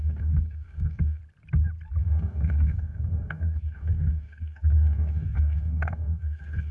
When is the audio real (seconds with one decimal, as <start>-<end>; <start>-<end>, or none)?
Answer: 1.2-2.0